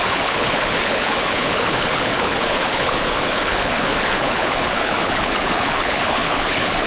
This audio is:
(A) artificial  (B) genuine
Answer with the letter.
A